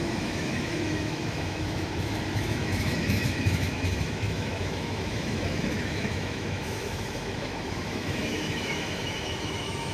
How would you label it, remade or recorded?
remade